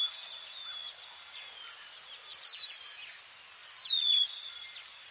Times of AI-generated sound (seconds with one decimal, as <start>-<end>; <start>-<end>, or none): 0.8-1.6; 2.3-2.8; 3.6-4.5